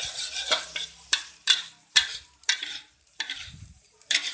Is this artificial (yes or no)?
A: yes